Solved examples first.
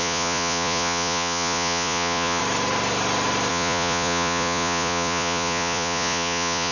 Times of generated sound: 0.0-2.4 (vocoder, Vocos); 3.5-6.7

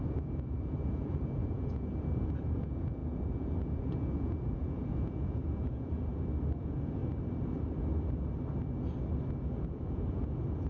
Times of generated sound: 0.0-6.1 (vocoder, Vocos); 6.6-7.0; 9.4-10.7

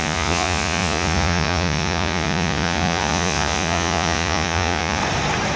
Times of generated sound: 0.0-5.0 (vocoder, Vocos)